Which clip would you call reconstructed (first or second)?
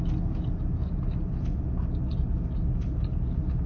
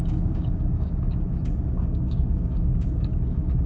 second